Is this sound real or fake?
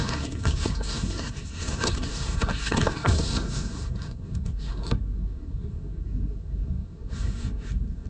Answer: fake